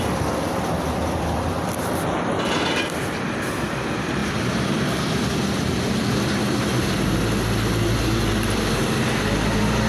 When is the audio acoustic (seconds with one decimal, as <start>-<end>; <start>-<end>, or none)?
0.0-9.9